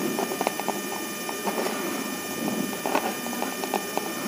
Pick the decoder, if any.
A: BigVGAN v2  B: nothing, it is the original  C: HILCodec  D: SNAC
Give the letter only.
A